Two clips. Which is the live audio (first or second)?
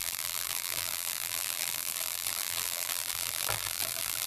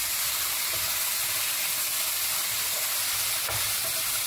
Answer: second